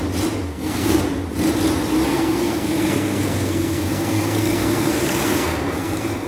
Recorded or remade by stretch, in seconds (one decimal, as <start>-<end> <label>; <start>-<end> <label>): 0.0-0.5 recorded; 0.5-1.0 remade; 1.0-2.1 recorded; 2.1-6.3 remade